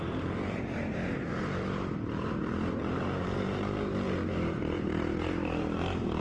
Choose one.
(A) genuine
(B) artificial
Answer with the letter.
B